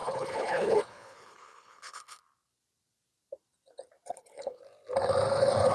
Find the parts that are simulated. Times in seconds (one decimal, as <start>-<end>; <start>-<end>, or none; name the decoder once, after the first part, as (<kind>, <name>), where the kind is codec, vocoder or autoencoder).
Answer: 0.0-2.2 (codec, HILCodec); 4.1-4.6